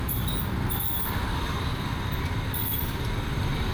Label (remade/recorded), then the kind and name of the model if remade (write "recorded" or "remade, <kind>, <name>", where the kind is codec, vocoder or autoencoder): remade, vocoder, BigVGAN v2